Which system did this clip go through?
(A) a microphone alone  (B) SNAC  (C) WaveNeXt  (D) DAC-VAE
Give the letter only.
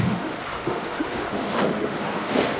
D